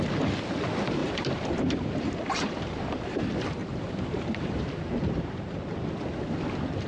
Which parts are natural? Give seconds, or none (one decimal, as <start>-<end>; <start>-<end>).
0.0-1.0; 3.2-3.6; 5.6-6.9